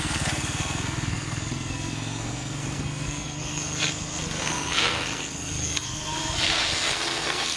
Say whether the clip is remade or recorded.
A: remade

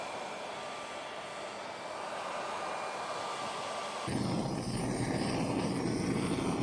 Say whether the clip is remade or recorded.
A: recorded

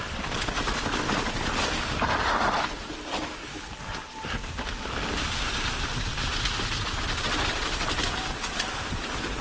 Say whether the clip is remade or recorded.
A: recorded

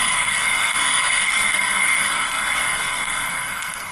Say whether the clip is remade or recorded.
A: remade